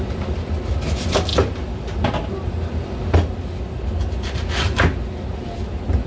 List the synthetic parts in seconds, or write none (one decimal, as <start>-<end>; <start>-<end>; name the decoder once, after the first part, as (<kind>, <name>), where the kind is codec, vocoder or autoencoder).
none